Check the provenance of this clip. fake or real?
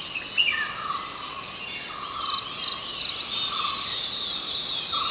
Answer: real